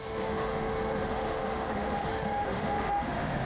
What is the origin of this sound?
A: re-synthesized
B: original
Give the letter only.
A